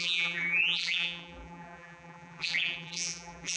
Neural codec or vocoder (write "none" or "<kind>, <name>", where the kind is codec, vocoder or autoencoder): vocoder, BigVGAN v2